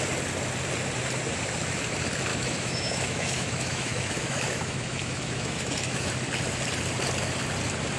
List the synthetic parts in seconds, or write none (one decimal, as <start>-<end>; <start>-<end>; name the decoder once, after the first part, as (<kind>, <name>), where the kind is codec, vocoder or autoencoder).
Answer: 2.3-6.1 (autoencoder, DAC-VAE)